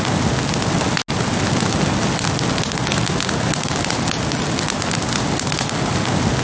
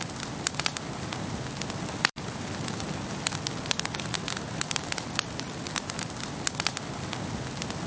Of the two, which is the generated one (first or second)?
second